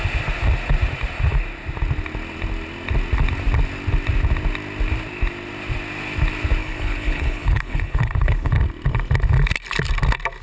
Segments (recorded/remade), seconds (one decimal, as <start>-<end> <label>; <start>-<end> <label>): 0.0-6.6 recorded; 6.6-8.5 remade; 8.5-10.4 recorded